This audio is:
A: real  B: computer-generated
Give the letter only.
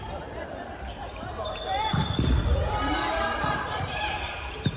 B